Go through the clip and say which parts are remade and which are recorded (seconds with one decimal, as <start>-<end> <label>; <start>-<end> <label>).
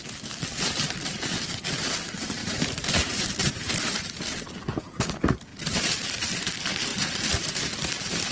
0.0-2.4 recorded; 2.4-3.7 remade; 3.7-8.3 recorded